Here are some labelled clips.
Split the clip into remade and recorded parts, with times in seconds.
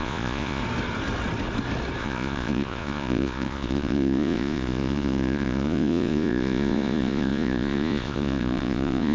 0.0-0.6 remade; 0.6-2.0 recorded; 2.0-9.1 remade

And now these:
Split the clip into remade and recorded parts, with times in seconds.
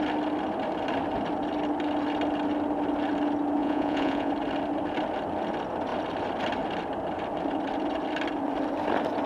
0.0-3.6 recorded; 3.6-4.3 remade; 4.3-9.3 recorded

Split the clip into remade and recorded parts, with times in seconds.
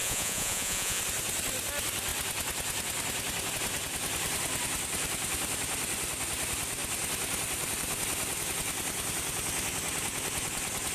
0.0-1.0 remade; 1.0-10.9 recorded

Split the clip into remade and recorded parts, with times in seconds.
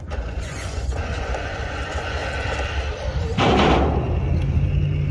0.0-2.2 remade; 2.2-5.1 recorded